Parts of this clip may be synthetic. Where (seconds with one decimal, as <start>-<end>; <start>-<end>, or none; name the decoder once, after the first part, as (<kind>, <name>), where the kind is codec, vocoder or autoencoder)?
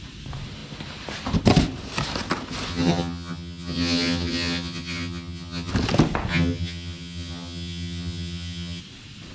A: 2.7-5.7 (vocoder, HiFi-GAN); 6.3-8.8